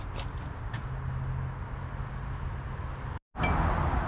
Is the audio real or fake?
real